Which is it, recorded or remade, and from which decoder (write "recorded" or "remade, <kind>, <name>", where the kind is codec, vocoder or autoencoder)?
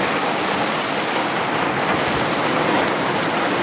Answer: recorded